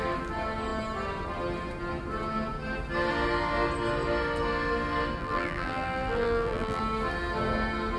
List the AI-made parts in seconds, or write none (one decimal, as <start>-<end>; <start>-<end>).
5.2-6.8